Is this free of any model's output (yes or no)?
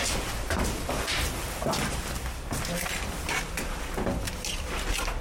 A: yes